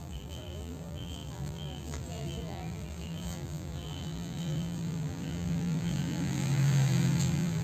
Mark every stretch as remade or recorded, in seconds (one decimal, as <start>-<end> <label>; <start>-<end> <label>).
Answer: 0.0-7.6 remade